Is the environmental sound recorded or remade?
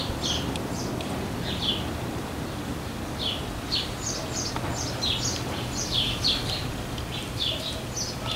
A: remade